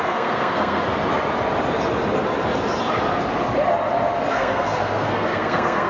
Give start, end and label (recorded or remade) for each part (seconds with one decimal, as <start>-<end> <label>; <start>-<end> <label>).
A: 0.0-0.8 remade; 0.8-4.3 recorded; 4.3-5.9 remade